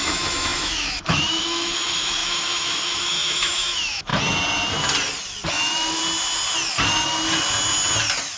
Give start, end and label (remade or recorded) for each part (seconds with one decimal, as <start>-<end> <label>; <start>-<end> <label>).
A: 0.0-4.1 remade; 4.1-5.5 recorded; 5.5-6.0 remade; 6.0-8.4 recorded